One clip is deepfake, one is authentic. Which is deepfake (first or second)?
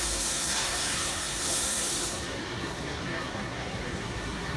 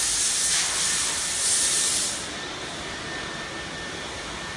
first